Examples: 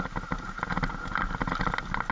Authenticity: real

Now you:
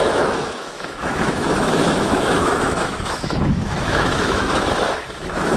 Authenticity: fake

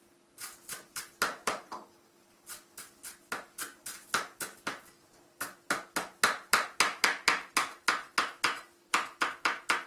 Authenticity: real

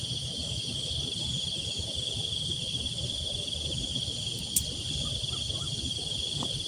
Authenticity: fake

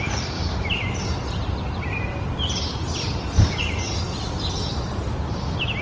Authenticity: real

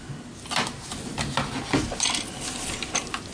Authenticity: real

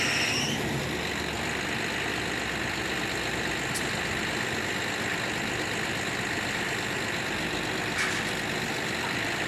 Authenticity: real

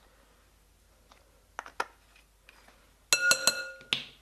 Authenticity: real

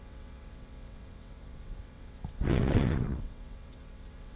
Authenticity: fake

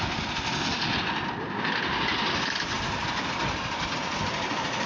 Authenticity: real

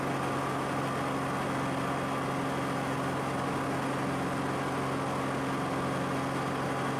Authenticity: real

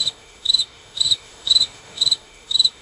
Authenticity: fake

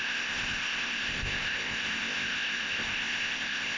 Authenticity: fake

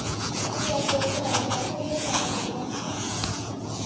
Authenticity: fake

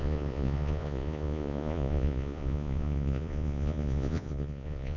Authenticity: fake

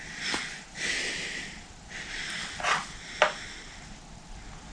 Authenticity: real